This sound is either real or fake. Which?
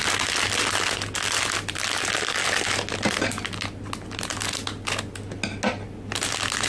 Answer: real